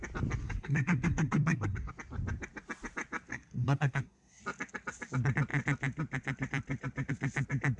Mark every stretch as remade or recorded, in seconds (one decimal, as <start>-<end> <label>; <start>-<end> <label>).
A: 0.0-0.4 recorded; 0.4-1.9 remade; 1.9-3.3 recorded; 3.3-4.4 remade; 4.4-7.8 recorded